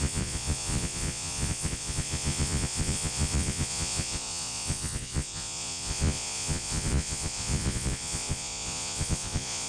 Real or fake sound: fake